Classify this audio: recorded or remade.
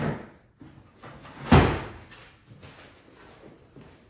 recorded